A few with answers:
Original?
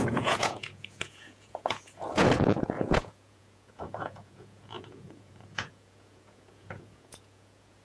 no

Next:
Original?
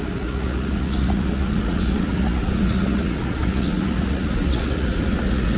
no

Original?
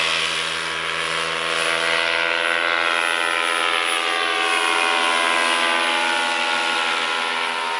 yes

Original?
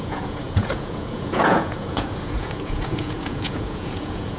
no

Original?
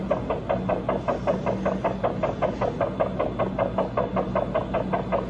yes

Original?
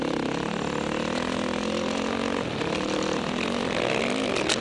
yes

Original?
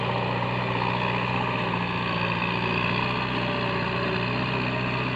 yes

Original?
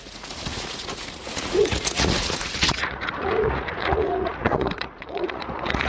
no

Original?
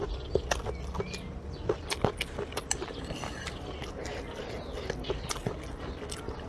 yes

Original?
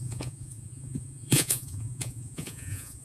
no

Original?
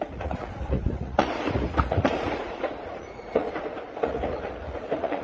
no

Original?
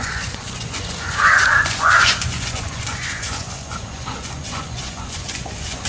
no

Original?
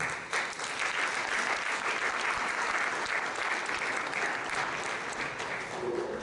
yes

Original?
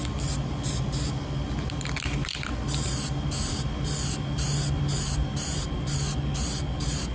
yes